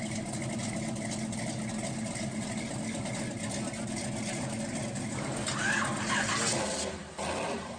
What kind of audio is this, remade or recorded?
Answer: recorded